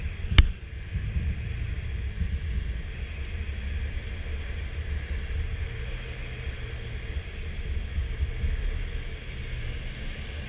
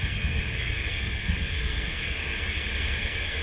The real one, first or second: first